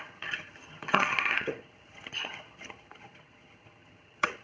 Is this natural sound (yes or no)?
no